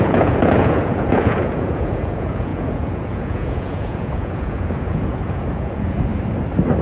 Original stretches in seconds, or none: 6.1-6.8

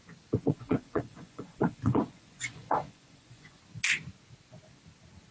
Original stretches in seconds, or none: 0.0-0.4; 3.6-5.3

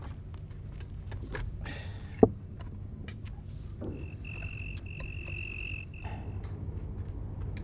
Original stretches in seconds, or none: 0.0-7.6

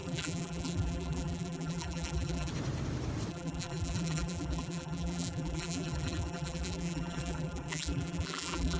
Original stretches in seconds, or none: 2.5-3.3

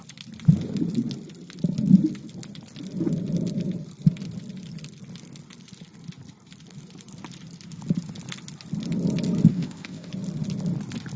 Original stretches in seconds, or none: 0.0-9.5; 10.1-11.2